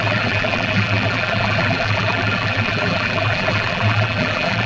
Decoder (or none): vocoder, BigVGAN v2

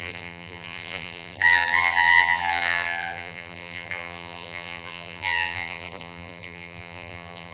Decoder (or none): vocoder, BigVGAN v2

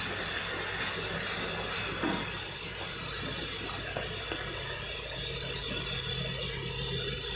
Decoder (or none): none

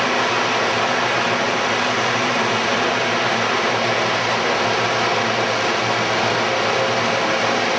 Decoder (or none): none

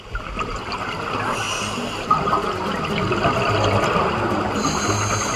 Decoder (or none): none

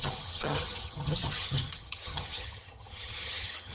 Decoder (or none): vocoder, HiFi-GAN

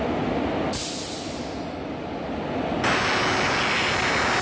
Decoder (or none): none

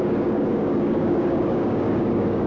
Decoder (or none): codec, DAC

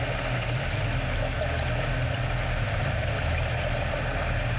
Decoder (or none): none